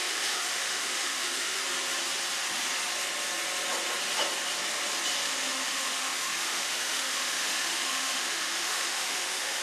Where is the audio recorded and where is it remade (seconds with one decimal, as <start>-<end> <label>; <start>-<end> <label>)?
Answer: 0.0-1.6 remade; 1.6-5.2 recorded; 5.2-9.6 remade